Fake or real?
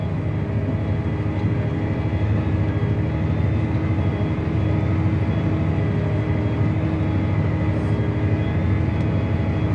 real